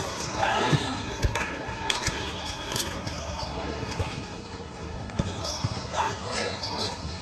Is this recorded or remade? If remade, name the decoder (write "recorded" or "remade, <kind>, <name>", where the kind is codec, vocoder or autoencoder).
remade, codec, SNAC